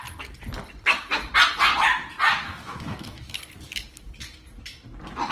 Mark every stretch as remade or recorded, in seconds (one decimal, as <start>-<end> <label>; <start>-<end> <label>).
0.0-2.4 recorded; 2.4-3.4 remade; 3.4-5.3 recorded